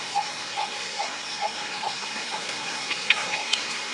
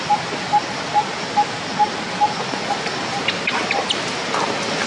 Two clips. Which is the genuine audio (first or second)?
second